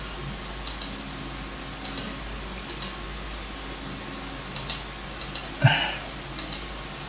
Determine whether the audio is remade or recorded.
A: recorded